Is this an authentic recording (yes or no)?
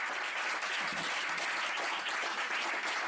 yes